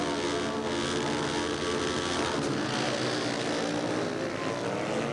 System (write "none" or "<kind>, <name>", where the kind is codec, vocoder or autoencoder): none